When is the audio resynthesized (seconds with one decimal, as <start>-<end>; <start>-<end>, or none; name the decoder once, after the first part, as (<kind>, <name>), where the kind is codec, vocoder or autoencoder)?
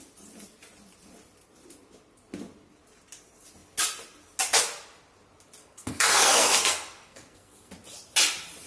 5.6-7.7 (codec, SNAC)